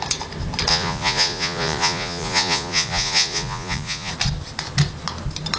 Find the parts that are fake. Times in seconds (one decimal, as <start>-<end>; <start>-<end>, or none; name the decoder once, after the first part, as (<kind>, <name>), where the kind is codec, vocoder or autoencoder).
0.7-4.1 (vocoder, Vocos)